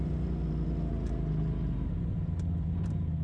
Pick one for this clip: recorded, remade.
recorded